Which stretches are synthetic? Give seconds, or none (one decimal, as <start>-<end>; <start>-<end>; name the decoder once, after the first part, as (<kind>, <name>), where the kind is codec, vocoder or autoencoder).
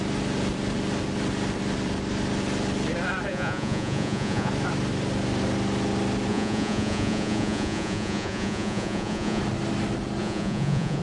3.3-4.5 (vocoder, Vocos); 6.3-9.4; 10.2-11.0